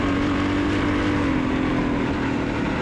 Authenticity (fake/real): real